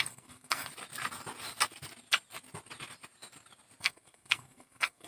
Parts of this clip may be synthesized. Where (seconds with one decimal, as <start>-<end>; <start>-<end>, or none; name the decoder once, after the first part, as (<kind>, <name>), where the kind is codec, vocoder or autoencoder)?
0.0-0.7 (codec, SNAC); 3.8-5.1